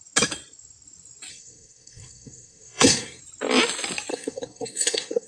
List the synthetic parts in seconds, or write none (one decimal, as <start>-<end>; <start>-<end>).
1.3-3.2; 4.1-5.3